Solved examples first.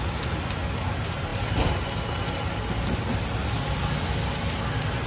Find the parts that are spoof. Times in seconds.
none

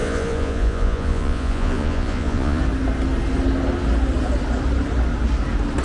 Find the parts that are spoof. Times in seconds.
0.0-2.6

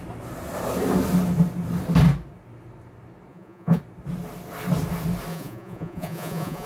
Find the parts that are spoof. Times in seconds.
3.3-3.8; 5.3-6.7

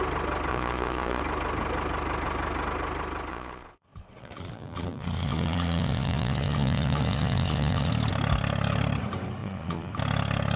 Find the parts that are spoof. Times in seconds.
0.5-1.2; 3.3-7.9; 9.4-9.9

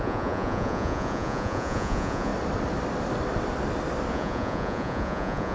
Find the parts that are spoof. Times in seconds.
0.0-2.3; 4.1-5.5

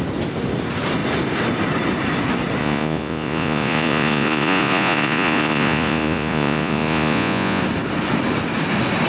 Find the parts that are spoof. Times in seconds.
2.6-7.6

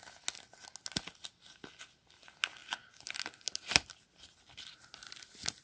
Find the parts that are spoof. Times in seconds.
none

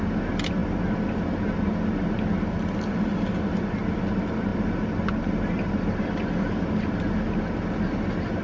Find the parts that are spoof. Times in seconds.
none